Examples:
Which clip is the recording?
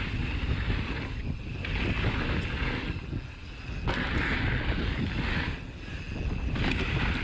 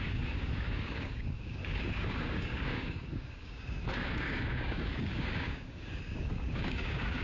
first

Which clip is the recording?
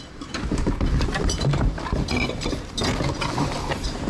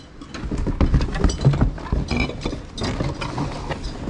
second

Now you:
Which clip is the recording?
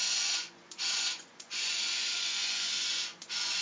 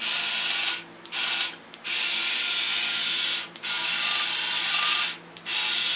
second